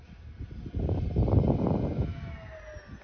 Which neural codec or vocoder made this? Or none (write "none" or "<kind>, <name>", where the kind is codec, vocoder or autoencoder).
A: none